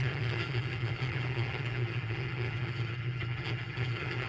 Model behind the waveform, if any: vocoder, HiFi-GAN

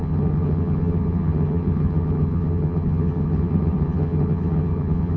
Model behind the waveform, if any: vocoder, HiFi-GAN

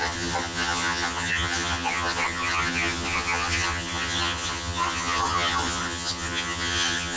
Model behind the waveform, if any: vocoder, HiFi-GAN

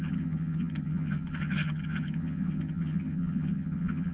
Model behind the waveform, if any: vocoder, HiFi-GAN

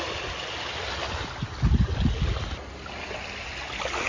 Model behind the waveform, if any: none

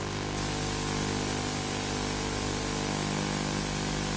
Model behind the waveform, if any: none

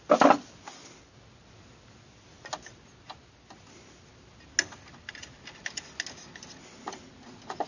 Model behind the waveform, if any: none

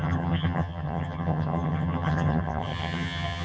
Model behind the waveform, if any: vocoder, HiFi-GAN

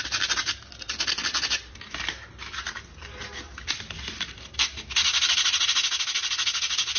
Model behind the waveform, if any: none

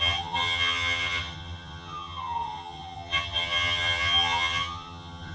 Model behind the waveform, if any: vocoder, HiFi-GAN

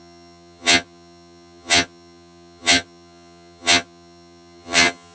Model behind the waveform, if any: vocoder, HiFi-GAN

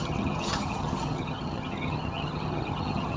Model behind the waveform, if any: vocoder, HiFi-GAN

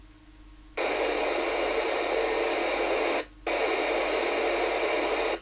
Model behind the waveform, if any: none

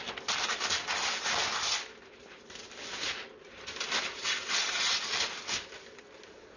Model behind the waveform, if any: none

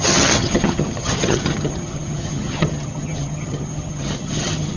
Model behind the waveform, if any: vocoder, HiFi-GAN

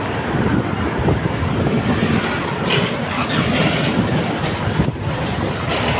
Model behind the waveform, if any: none